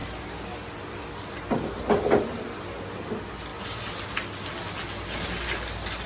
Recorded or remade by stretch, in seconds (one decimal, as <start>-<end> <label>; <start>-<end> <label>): 0.0-6.1 recorded